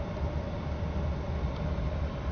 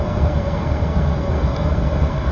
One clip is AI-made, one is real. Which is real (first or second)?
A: first